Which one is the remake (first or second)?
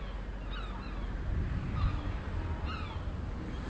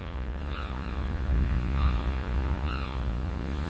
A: second